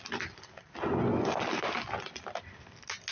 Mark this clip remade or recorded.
recorded